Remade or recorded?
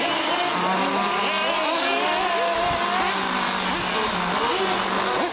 recorded